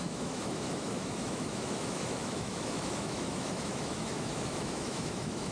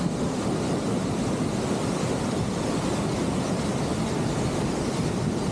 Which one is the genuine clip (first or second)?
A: second